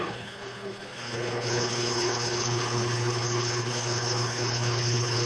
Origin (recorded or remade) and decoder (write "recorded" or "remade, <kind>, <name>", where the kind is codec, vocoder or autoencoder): remade, codec, HILCodec